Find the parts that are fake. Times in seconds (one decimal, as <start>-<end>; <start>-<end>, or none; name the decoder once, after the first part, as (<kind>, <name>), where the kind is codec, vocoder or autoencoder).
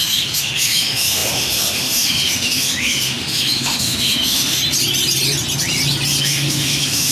0.0-4.6 (autoencoder, DAC-VAE); 6.2-7.1